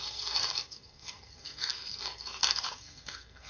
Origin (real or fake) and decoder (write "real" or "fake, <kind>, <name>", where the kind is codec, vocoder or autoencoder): fake, codec, SNAC